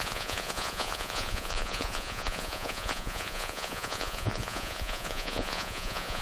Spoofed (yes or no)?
yes